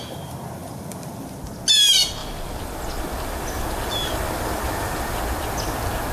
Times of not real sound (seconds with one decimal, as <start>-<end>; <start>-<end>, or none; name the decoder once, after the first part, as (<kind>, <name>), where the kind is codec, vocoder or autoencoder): 0.6-1.4 (vocoder, BigVGAN v2); 2.2-5.2

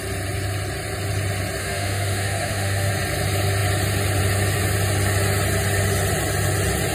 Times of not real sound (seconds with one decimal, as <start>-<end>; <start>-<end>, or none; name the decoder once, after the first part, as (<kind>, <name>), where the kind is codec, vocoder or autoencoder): 1.6-2.9 (autoencoder, DAC-VAE)

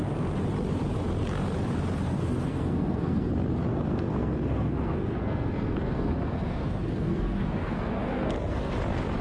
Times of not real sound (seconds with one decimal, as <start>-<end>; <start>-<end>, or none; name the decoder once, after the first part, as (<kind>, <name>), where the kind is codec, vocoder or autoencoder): 2.1-3.3 (codec, SNAC); 3.7-8.7

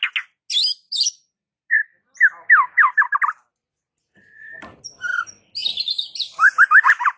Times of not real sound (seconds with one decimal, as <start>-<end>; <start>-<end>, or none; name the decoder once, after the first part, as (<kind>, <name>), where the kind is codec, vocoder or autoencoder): none

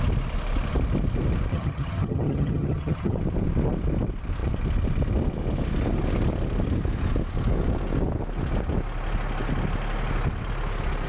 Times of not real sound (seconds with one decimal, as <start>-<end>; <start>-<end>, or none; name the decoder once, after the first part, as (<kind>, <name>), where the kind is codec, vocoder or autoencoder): 1.5-3.2 (vocoder, HiFi-GAN)

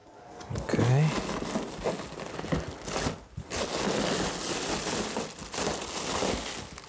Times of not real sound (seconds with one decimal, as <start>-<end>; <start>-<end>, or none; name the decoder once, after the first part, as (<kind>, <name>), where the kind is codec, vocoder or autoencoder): none

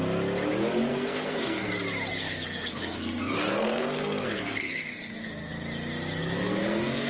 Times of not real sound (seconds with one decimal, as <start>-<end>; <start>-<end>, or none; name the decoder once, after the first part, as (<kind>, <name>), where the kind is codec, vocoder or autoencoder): 0.9-1.7 (codec, SNAC); 2.1-5.5; 6.2-7.1